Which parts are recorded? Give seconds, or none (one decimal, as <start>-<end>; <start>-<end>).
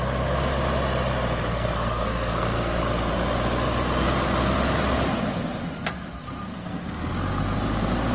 0.0-1.5; 2.8-6.5; 7.1-8.1